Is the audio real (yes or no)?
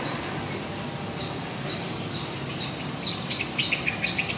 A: yes